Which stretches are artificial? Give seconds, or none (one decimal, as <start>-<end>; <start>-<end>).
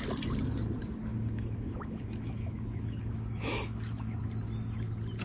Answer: 1.1-4.2